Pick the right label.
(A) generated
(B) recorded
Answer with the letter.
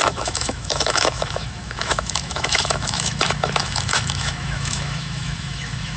A